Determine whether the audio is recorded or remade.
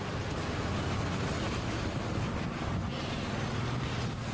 recorded